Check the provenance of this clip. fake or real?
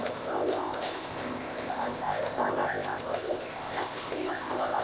fake